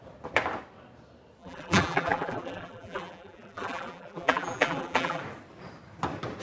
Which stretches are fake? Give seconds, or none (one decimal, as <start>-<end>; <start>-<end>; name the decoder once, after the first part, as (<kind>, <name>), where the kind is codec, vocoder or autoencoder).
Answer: 1.4-5.2 (vocoder, BigVGAN v2)